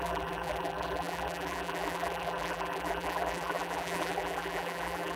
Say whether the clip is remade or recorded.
remade